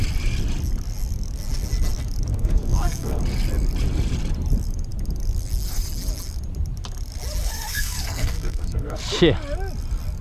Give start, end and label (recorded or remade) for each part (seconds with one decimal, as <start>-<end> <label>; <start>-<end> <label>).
0.0-2.3 recorded; 2.3-3.2 remade; 3.2-7.4 recorded; 7.4-9.0 remade; 9.0-10.2 recorded